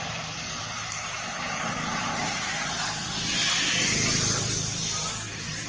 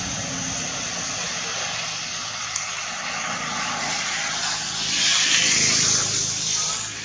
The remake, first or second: first